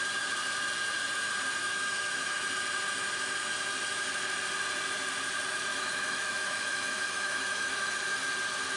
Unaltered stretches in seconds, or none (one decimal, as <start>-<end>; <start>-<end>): 0.0-1.6; 2.5-5.7; 7.9-8.8